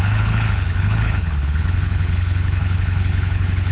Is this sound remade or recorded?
remade